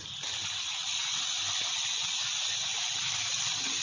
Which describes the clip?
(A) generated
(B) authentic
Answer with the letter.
B